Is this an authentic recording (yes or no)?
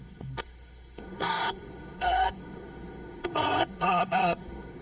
no